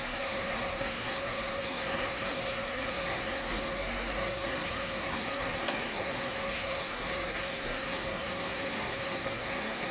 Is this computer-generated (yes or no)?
yes